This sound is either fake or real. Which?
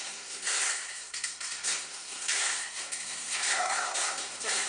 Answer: fake